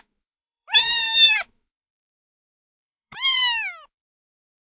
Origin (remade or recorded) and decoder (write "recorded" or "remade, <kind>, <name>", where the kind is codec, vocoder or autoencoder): remade, autoencoder, DAC-VAE